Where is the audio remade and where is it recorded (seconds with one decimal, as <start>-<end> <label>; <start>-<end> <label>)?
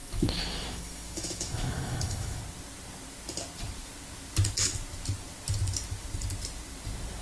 0.0-2.4 remade; 2.4-7.2 recorded